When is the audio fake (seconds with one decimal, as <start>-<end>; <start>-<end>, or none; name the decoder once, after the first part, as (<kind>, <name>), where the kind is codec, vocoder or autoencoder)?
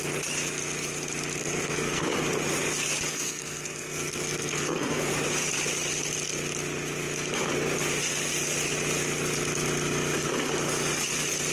1.4-2.0 (codec, SNAC); 3.1-5.1